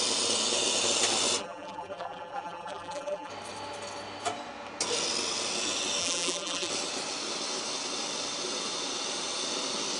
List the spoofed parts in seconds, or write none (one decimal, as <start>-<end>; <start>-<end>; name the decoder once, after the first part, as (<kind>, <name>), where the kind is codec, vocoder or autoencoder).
1.4-3.3 (vocoder, BigVGAN v2); 6.0-6.7